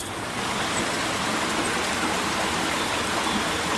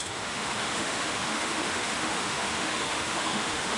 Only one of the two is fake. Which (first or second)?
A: second